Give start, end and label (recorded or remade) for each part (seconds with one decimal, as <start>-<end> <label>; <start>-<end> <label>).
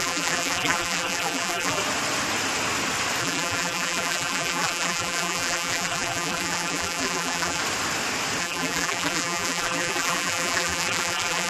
0.0-1.8 remade; 1.8-3.2 recorded; 3.2-7.6 remade; 7.6-8.4 recorded; 8.4-11.5 remade